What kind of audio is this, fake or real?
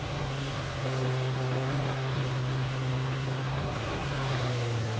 fake